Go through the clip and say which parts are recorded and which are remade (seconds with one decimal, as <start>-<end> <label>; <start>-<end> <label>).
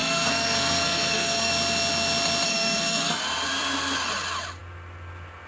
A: 0.0-1.5 remade; 1.5-2.5 recorded; 2.5-3.2 remade; 3.2-5.5 recorded